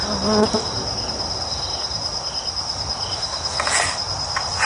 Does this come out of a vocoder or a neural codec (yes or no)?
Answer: no